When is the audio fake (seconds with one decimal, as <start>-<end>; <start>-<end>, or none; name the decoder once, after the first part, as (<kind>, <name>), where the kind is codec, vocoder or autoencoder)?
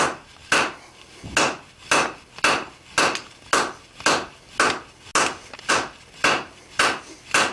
none